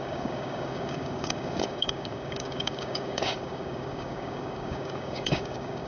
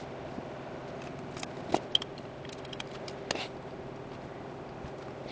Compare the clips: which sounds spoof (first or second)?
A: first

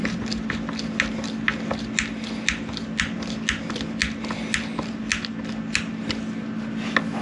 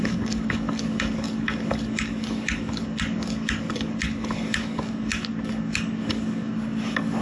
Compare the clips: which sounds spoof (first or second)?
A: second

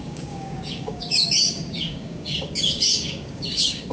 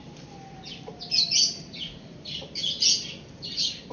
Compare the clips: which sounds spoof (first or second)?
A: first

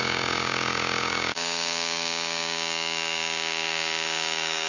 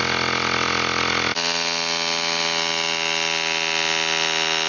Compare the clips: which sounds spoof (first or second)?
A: first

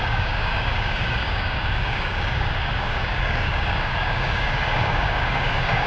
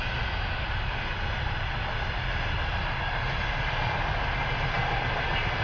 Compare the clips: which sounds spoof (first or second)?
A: first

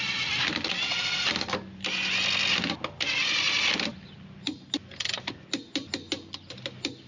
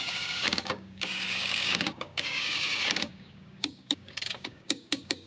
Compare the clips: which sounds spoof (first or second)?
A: second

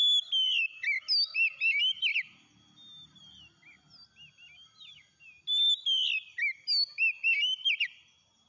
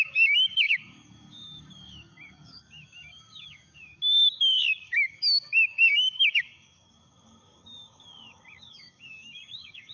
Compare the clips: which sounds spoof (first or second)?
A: second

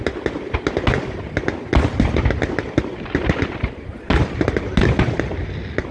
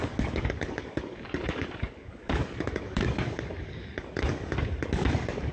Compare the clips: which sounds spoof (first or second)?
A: second